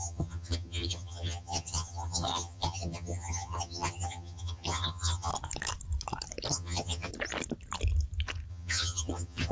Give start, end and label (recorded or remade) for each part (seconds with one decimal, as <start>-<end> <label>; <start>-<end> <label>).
0.0-5.3 remade; 5.3-6.5 recorded; 6.5-7.1 remade; 7.1-8.5 recorded; 8.5-9.5 remade